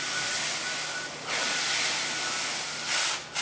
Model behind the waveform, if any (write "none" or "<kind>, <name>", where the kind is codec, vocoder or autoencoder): none